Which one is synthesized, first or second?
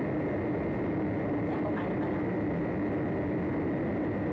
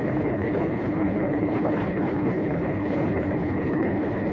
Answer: second